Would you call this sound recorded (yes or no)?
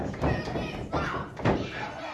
yes